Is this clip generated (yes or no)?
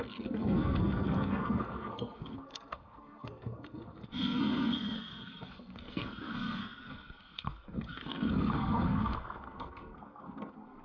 yes